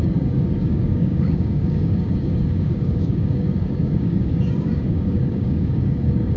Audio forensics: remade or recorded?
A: remade